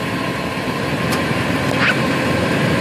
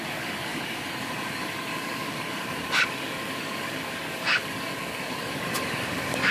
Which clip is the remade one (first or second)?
second